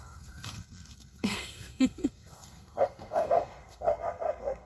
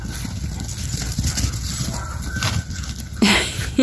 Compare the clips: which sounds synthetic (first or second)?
first